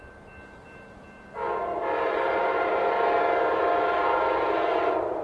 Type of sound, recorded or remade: recorded